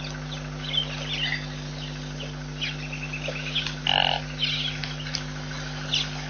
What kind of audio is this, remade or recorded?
recorded